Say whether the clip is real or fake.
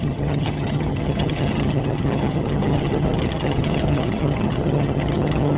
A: fake